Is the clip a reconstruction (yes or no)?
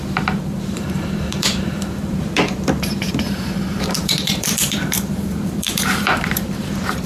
yes